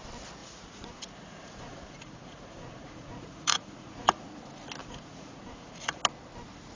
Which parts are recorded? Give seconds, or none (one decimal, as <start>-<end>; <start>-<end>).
0.0-0.4; 4.3-4.8; 6.0-6.8